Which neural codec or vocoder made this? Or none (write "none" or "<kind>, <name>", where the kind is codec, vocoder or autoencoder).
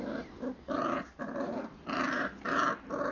vocoder, BigVGAN v2